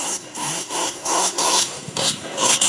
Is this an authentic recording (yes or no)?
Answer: no